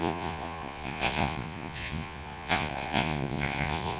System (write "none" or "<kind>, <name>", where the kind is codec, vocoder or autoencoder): vocoder, Vocos